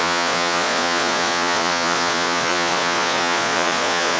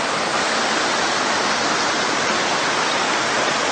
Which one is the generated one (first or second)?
first